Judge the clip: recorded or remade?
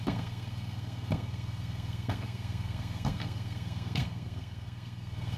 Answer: remade